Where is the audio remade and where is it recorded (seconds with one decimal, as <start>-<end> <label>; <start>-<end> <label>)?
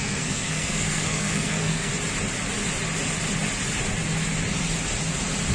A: 0.0-1.9 remade; 1.9-5.5 recorded